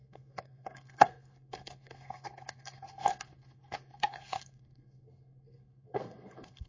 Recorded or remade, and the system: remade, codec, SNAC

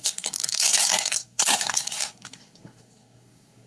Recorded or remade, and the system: remade, codec, SNAC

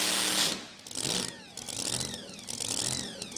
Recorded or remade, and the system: recorded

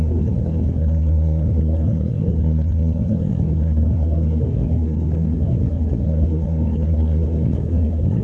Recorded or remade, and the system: remade, codec, SNAC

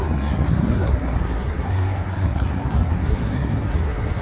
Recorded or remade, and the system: remade, codec, SNAC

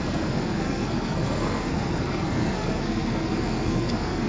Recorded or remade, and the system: remade, codec, SNAC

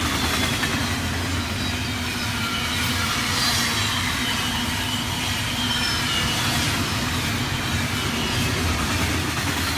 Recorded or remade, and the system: recorded